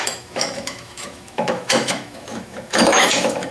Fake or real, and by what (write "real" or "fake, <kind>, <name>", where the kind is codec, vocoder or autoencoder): fake, autoencoder, DAC-VAE